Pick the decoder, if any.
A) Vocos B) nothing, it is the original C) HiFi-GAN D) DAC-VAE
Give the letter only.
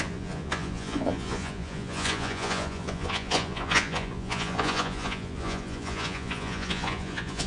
A